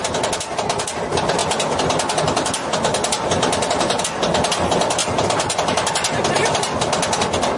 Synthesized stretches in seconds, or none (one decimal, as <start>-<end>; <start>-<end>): none